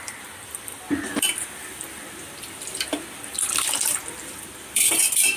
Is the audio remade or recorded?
remade